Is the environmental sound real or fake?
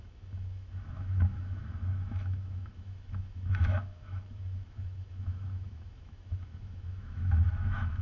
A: fake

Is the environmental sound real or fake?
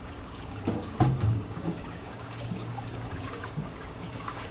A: fake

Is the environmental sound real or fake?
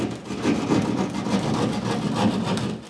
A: real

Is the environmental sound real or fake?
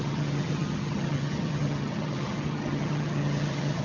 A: fake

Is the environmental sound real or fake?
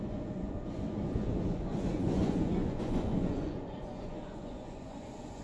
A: fake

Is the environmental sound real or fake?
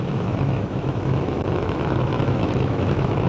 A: fake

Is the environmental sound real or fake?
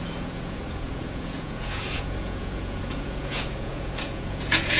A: fake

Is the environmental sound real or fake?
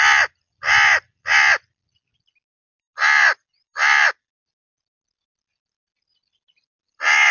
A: real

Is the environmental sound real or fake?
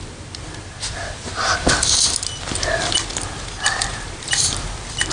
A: fake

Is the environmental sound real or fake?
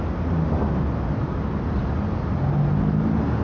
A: real